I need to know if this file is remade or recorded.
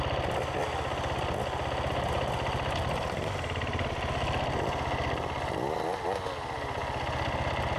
recorded